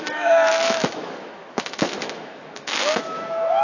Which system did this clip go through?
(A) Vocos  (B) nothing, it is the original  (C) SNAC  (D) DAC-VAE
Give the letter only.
D